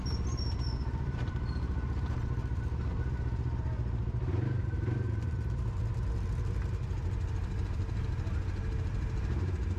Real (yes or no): yes